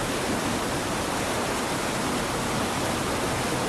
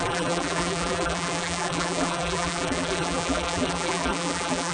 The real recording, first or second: first